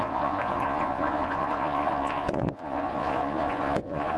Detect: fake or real fake